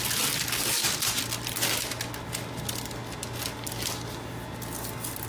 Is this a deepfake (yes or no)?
no